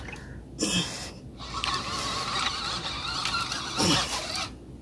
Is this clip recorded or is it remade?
recorded